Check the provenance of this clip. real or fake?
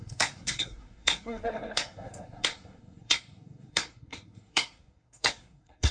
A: fake